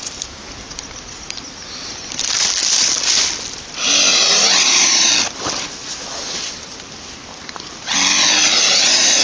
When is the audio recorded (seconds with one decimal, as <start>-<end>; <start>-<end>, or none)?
0.0-4.1; 5.1-8.4